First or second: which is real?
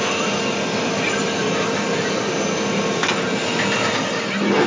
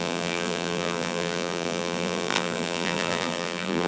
first